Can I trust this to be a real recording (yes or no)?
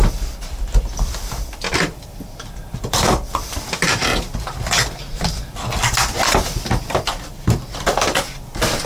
no